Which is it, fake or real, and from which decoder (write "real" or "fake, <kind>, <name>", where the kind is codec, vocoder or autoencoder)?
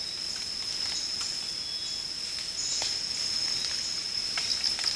real